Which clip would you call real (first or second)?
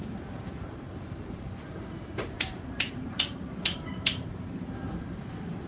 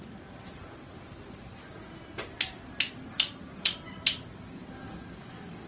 second